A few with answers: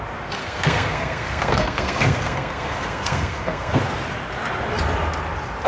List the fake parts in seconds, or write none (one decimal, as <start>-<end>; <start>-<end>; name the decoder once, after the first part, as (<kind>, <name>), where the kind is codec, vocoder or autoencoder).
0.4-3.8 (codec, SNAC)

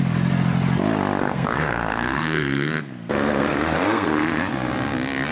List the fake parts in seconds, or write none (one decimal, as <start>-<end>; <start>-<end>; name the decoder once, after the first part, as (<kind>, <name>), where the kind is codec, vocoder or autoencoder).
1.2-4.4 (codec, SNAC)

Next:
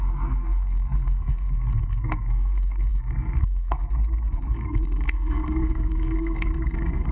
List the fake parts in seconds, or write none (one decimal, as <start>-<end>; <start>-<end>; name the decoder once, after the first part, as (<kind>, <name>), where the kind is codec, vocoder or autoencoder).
0.0-7.1 (codec, SNAC)

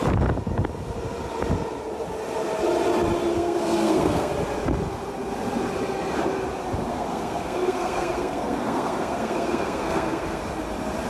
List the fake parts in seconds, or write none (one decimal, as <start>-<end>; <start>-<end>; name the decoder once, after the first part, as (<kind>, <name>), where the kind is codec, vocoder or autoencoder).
3.3-4.3 (codec, SNAC); 6.9-10.4

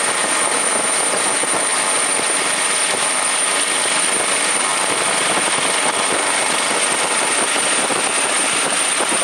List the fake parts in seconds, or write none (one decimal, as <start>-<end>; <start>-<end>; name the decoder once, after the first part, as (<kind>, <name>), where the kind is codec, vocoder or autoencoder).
none